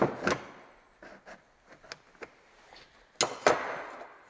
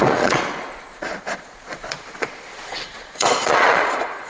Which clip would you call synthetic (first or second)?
second